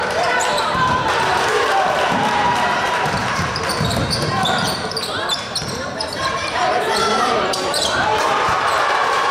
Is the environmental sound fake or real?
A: fake